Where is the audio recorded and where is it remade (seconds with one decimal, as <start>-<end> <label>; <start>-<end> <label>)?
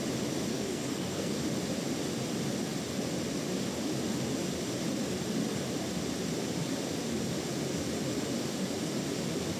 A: 0.0-0.5 recorded; 0.5-1.4 remade; 1.4-9.6 recorded